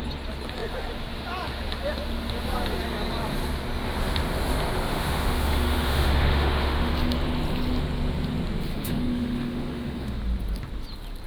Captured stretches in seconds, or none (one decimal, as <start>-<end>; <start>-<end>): 0.0-4.9; 6.9-8.7; 10.2-11.3